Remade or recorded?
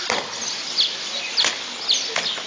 recorded